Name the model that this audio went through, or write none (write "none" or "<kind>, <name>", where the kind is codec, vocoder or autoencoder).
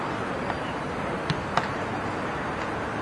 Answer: none